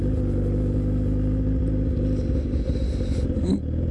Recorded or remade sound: recorded